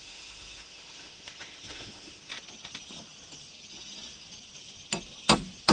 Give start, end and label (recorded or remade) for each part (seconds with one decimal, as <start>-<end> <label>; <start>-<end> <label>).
0.0-2.3 remade; 2.3-5.7 recorded